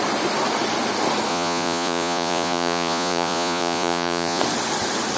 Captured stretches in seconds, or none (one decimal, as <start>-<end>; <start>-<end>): 0.0-1.3; 4.4-5.2